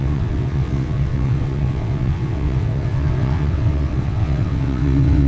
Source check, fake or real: fake